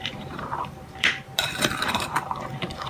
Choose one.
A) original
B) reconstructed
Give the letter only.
B